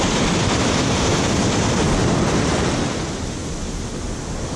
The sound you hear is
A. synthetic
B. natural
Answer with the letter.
B